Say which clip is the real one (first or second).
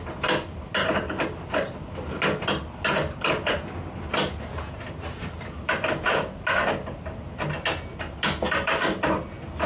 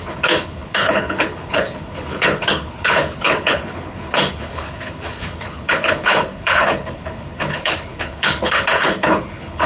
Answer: first